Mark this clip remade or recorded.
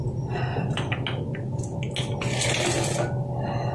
recorded